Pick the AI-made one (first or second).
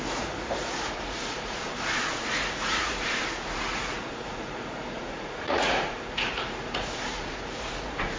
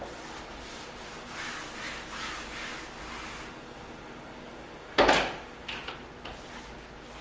first